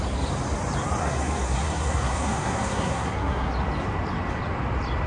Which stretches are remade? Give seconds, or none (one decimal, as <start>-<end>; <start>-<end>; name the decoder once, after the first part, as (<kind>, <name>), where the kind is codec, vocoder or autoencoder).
1.0-3.5 (codec, SNAC)